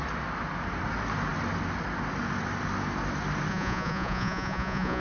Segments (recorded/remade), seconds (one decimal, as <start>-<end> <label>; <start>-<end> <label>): 0.0-3.5 recorded; 3.5-5.0 remade